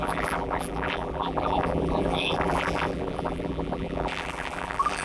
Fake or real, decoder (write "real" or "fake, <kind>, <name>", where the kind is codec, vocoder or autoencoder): fake, vocoder, BigVGAN v2